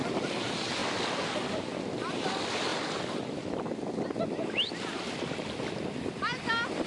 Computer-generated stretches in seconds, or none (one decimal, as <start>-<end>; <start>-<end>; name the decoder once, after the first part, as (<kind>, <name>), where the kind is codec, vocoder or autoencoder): none

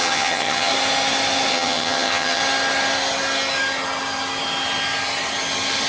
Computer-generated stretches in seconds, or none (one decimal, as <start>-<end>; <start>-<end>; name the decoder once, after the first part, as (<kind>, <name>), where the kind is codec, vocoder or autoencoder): 0.0-0.7 (vocoder, HiFi-GAN); 1.5-2.4

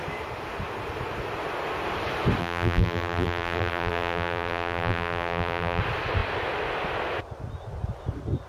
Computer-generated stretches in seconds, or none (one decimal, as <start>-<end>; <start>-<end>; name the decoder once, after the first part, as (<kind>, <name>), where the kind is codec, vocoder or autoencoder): 2.4-5.8 (vocoder, BigVGAN v2)